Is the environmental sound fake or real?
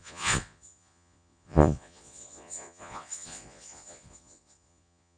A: fake